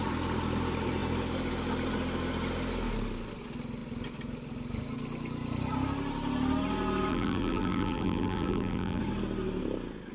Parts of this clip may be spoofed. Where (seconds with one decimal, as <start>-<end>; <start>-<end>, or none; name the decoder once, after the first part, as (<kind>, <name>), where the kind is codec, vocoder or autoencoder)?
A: 7.1-9.0 (vocoder, BigVGAN v2)